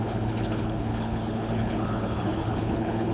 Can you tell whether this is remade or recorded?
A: remade